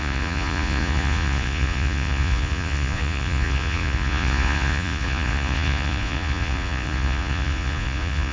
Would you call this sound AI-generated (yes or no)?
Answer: yes